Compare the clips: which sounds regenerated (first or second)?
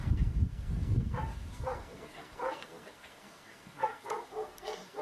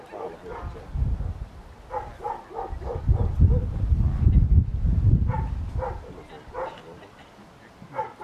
first